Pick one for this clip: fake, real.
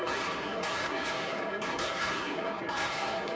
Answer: fake